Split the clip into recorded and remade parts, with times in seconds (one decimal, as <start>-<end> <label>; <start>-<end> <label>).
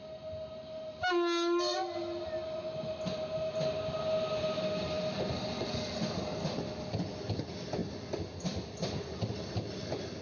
0.0-10.2 recorded